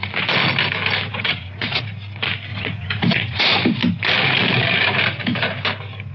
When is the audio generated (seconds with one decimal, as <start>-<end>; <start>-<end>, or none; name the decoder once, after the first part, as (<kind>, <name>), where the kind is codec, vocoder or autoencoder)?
1.1-1.9 (vocoder, Vocos); 2.5-3.4